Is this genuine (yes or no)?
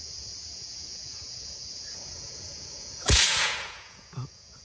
no